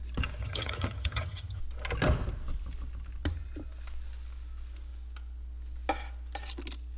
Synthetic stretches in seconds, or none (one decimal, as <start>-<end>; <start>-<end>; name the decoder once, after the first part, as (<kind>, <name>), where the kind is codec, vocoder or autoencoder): 0.4-1.6 (vocoder, HiFi-GAN)